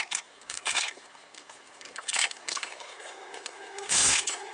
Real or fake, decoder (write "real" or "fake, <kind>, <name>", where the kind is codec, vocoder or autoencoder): fake, codec, SNAC